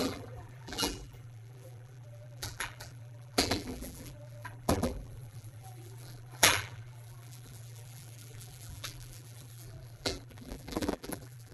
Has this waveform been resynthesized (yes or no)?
yes